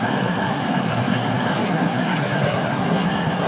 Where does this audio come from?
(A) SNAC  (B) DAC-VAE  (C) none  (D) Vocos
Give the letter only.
A